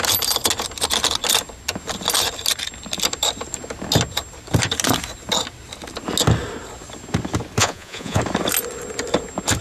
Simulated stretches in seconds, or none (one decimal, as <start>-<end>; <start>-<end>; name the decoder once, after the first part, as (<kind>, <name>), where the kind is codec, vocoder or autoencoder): 7.6-8.2 (vocoder, Vocos)